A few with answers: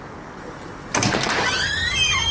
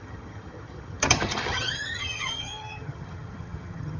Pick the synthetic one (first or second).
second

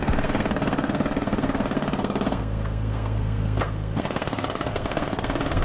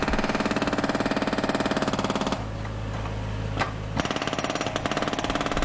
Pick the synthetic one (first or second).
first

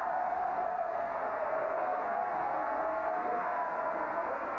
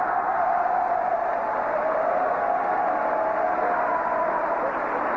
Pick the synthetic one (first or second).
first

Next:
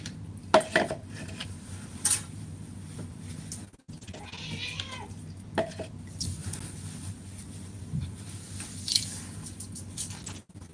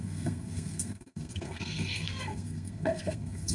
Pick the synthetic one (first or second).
second